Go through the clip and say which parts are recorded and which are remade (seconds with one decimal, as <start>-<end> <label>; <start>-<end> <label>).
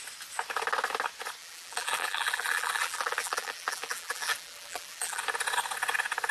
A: 0.0-1.4 recorded; 1.4-5.2 remade; 5.2-6.3 recorded